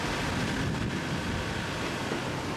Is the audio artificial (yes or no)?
no